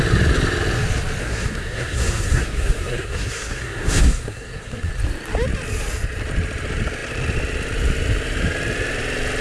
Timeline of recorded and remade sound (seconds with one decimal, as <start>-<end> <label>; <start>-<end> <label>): 0.0-1.2 recorded; 1.2-4.9 remade; 4.9-9.4 recorded